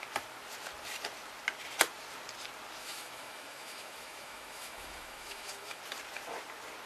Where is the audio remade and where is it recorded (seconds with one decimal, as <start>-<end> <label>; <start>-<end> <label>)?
0.0-2.8 recorded; 2.8-5.8 remade; 5.8-6.9 recorded